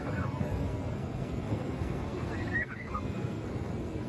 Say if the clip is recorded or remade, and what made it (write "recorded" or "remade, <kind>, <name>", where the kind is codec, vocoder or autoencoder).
remade, codec, SNAC